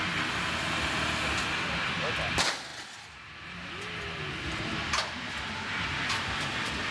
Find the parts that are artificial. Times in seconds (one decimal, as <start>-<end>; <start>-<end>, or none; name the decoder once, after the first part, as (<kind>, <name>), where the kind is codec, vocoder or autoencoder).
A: none